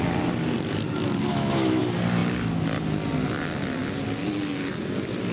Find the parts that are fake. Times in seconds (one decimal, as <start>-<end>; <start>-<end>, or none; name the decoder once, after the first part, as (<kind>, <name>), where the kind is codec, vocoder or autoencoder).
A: 1.3-1.8 (autoencoder, DAC-VAE)